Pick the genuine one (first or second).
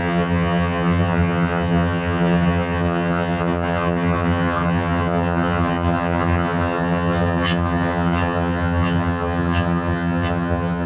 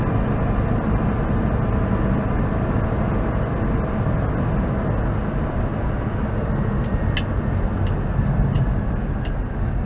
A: second